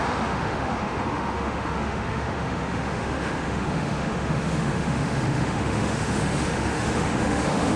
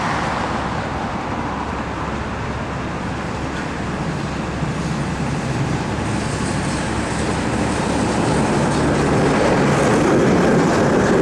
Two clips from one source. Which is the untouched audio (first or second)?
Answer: second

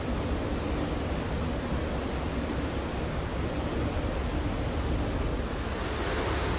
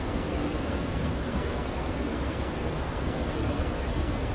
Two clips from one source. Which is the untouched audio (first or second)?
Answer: first